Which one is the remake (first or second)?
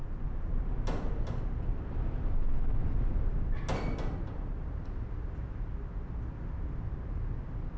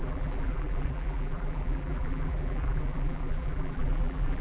second